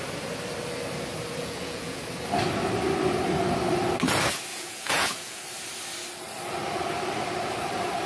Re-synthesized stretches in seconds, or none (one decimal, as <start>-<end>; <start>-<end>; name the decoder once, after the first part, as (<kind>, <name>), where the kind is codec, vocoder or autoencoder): 1.4-2.0 (vocoder, Vocos); 4.5-5.4